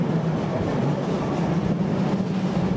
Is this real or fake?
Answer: real